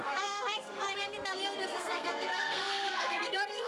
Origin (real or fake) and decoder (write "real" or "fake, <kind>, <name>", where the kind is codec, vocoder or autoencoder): fake, codec, SNAC